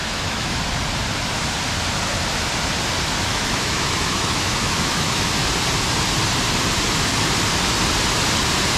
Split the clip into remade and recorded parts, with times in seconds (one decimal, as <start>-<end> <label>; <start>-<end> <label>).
0.0-0.6 remade; 0.6-3.3 recorded; 3.3-5.3 remade; 5.3-8.8 recorded